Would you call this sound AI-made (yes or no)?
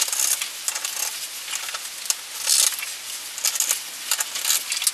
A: no